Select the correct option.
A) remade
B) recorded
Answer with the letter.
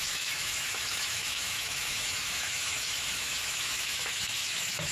A